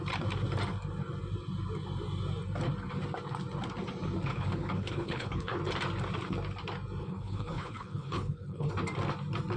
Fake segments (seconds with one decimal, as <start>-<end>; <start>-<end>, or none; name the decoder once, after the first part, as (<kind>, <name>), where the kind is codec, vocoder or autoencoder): 4.3-5.6 (codec, HILCodec); 7.0-8.7